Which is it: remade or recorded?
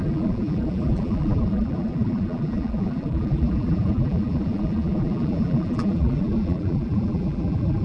remade